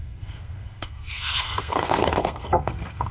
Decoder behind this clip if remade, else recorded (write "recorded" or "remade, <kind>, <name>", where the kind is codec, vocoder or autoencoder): remade, codec, SNAC